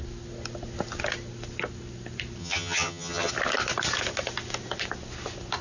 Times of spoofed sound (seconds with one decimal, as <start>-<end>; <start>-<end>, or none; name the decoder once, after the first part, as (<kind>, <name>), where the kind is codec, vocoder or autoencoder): 2.4-3.3 (vocoder, HiFi-GAN)